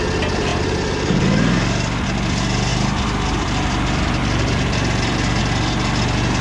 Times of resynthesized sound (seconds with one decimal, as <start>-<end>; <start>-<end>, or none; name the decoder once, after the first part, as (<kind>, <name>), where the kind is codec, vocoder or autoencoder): 0.5-1.2 (vocoder, BigVGAN v2); 2.7-5.4